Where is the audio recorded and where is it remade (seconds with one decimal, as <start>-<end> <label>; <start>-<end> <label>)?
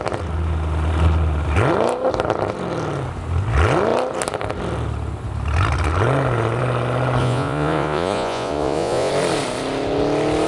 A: 0.0-7.2 recorded; 7.2-9.1 remade; 9.1-10.5 recorded